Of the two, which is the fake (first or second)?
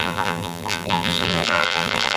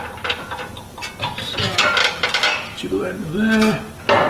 first